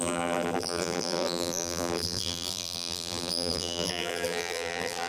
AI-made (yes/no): yes